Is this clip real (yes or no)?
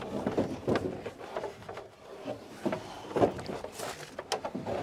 yes